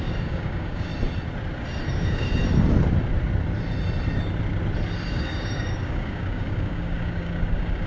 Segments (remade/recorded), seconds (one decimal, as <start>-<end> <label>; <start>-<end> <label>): 0.0-0.9 remade; 0.9-1.9 recorded; 1.9-2.4 remade; 2.4-5.1 recorded; 5.1-7.9 remade